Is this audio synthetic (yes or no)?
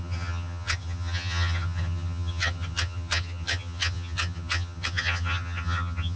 yes